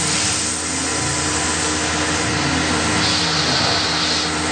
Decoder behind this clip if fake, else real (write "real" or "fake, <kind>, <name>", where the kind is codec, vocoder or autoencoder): real